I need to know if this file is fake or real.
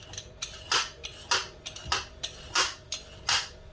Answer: real